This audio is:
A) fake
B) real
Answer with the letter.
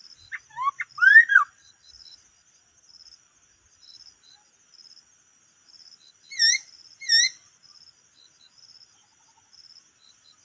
B